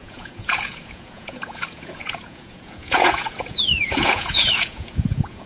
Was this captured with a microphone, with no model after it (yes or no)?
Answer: no